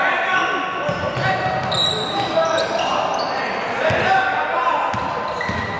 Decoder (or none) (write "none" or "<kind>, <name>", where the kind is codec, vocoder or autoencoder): none